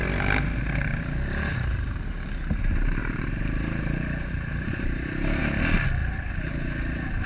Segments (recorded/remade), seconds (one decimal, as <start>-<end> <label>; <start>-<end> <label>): 0.0-1.5 recorded; 1.5-2.1 remade; 2.1-3.0 recorded; 3.0-5.4 remade; 5.4-6.0 recorded; 6.0-7.3 remade